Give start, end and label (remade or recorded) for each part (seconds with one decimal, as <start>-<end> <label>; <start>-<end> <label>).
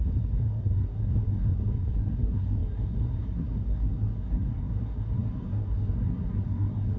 0.0-7.0 remade